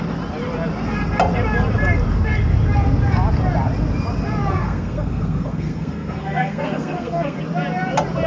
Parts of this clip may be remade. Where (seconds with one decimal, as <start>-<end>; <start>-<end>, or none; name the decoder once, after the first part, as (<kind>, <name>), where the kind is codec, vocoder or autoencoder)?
4.5-7.4 (codec, SNAC)